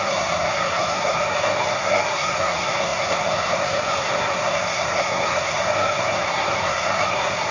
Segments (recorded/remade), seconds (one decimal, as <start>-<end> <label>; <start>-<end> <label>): 0.0-7.5 remade